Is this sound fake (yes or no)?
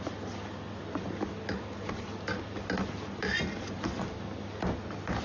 no